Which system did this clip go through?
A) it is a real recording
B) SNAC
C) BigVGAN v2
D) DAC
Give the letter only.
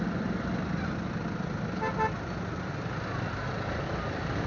A